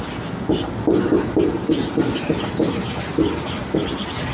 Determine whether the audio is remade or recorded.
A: recorded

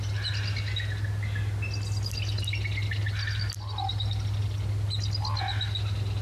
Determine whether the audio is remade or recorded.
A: recorded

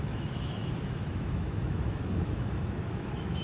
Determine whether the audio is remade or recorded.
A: remade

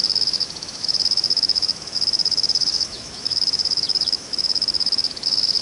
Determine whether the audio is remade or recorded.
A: remade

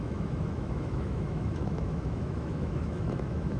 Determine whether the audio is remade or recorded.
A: remade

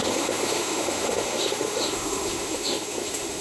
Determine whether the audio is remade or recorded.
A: remade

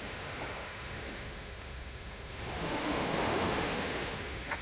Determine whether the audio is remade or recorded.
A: remade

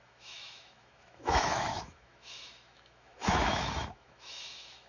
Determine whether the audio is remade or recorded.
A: remade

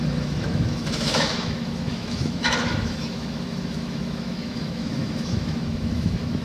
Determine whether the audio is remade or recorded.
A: remade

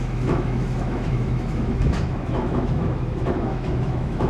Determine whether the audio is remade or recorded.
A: remade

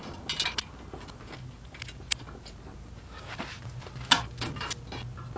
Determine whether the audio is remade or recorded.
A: recorded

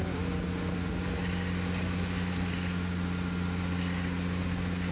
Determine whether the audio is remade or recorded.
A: recorded